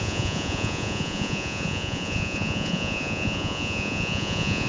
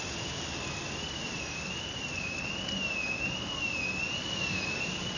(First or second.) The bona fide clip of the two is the second